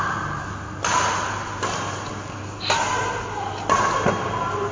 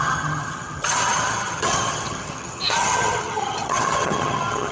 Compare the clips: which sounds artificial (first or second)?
second